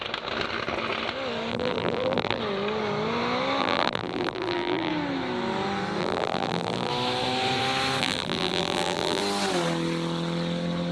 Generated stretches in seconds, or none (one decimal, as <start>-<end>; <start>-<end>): 1.5-2.4; 3.6-4.9; 6.0-6.9; 8.0-9.2